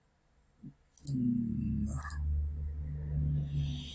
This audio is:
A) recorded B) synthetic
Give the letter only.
A